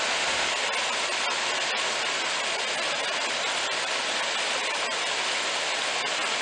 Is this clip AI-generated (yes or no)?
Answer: no